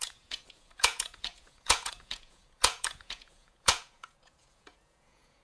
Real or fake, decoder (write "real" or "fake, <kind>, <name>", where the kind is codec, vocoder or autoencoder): fake, vocoder, Vocos